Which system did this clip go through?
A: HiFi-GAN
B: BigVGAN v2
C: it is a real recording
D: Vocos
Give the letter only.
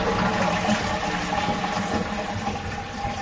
C